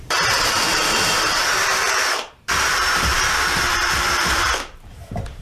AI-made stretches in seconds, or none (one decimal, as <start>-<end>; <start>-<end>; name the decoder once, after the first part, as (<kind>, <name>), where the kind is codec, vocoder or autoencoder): 0.0-5.4 (vocoder, BigVGAN v2)